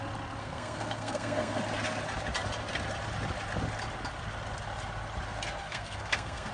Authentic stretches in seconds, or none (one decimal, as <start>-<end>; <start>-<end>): 0.0-0.4; 1.6-5.6